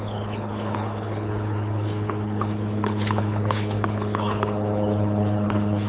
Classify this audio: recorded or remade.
remade